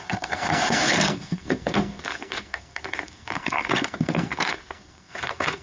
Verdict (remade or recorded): remade